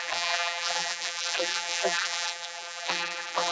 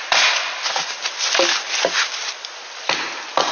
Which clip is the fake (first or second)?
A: first